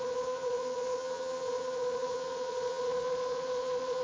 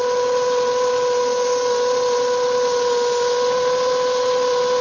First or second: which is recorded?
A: second